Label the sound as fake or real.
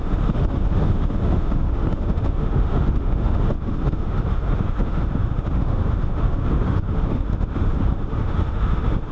fake